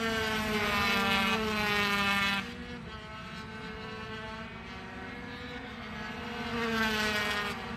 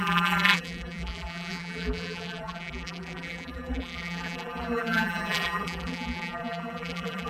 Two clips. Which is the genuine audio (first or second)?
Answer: first